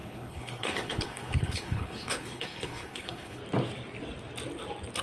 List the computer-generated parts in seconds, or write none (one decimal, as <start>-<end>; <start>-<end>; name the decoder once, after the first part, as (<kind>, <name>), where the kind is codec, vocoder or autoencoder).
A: 0.0-3.4 (codec, HILCodec)